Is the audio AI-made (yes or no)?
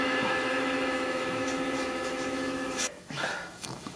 yes